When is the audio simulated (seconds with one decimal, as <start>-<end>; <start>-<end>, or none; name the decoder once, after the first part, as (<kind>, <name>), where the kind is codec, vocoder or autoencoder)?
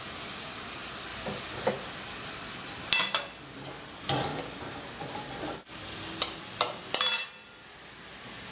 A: none